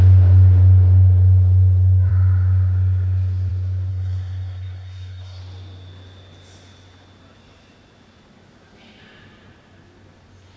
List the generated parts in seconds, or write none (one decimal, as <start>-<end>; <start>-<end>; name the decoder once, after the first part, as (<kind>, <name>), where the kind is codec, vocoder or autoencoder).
3.9-5.4 (codec, SNAC)